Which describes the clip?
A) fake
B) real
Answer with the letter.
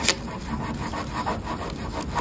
B